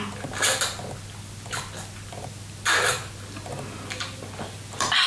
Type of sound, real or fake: real